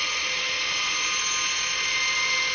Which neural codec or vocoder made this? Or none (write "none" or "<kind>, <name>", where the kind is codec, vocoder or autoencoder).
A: none